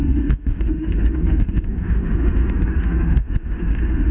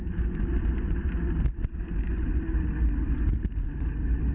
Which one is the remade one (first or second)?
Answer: first